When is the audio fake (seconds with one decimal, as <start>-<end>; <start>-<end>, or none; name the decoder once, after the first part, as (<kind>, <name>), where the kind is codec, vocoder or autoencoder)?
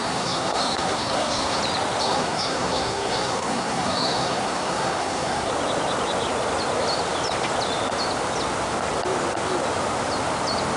0.0-1.6 (codec, SNAC); 2.0-5.5